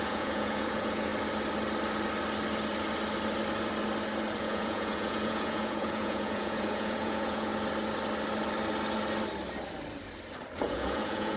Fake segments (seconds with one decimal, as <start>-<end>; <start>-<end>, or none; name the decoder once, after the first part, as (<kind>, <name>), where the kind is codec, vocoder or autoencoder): 0.0-1.1 (vocoder, Vocos); 4.4-7.5; 10.6-11.4